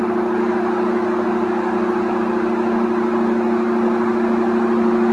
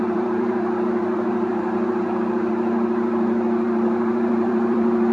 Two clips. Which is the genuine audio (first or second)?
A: first